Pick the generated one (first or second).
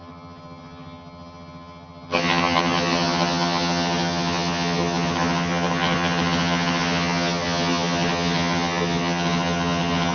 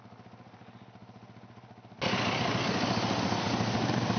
first